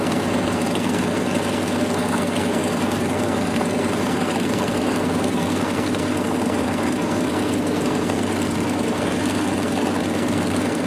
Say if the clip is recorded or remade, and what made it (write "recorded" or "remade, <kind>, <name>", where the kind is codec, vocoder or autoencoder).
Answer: remade, codec, SNAC